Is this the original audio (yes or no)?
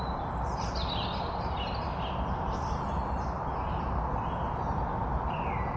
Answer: yes